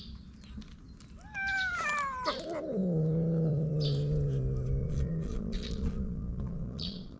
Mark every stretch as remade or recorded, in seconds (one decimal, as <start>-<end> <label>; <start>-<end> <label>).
0.0-4.8 recorded; 4.8-7.2 remade